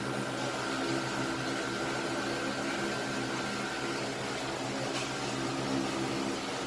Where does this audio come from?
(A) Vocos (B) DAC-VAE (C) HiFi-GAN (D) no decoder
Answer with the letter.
D